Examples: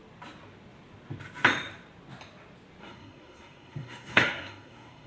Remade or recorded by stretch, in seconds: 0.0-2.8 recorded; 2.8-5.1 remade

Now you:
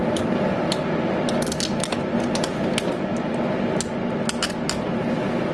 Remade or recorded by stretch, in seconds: 0.0-5.5 recorded

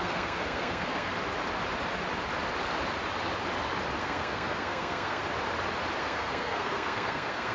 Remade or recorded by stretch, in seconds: 0.0-1.1 remade; 1.1-4.0 recorded; 4.0-5.2 remade; 5.2-6.0 recorded; 6.0-7.5 remade

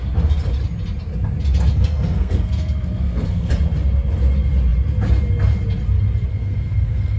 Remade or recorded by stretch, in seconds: 0.0-1.7 recorded; 1.7-3.5 remade; 3.5-6.3 recorded; 6.3-7.2 remade

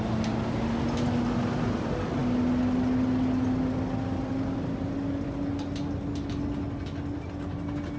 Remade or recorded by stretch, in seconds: 0.0-8.0 recorded

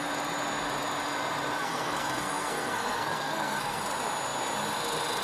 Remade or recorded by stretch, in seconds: 0.0-1.6 recorded; 1.6-3.8 remade; 3.8-5.2 recorded